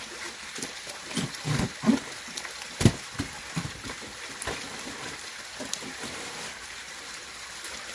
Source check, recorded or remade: remade